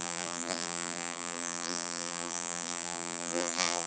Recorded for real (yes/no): no